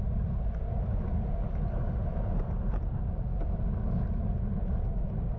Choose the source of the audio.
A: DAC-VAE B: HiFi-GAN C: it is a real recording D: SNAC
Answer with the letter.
C